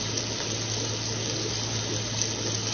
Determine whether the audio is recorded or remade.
recorded